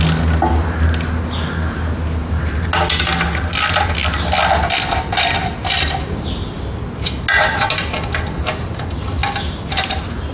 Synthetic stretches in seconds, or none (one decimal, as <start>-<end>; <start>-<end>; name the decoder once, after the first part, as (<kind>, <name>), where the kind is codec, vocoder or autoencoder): none